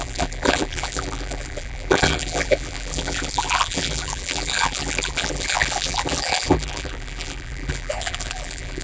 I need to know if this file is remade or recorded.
remade